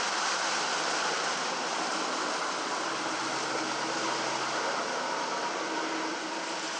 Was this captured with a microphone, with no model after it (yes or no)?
yes